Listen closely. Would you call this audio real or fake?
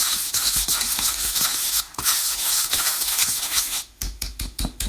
fake